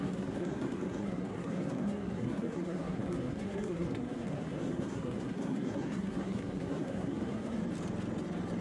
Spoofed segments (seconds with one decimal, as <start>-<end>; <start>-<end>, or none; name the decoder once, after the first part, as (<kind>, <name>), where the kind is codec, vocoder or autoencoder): 0.0-7.6 (codec, SNAC)